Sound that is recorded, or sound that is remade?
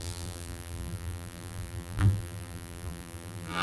remade